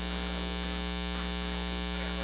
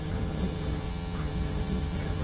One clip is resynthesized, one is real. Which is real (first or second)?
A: first